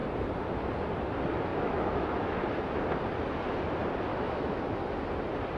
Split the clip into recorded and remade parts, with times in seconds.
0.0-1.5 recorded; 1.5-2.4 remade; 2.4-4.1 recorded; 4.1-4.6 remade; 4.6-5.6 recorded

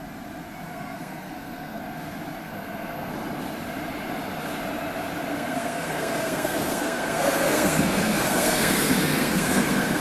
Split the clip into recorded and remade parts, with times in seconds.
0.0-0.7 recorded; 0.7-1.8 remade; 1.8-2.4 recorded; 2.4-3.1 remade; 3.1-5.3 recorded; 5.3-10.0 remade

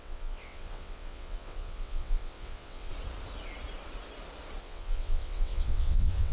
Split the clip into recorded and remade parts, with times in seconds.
0.0-2.9 remade; 2.9-4.6 recorded; 4.6-6.3 remade